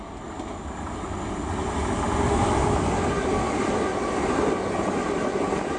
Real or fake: real